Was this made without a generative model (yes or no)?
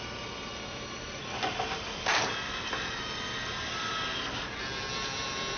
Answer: yes